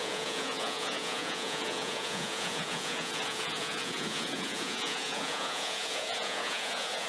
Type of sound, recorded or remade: remade